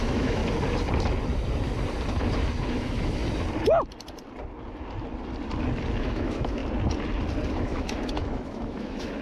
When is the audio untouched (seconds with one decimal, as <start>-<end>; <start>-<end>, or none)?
0.4-2.7; 3.2-6.0; 6.6-7.5